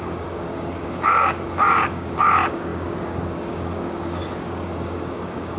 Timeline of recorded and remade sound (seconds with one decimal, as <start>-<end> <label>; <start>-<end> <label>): 0.0-5.6 remade